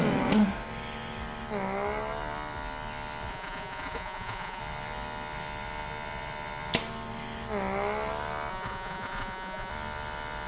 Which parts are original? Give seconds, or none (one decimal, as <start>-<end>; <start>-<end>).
0.0-3.3; 4.6-8.5; 9.7-10.5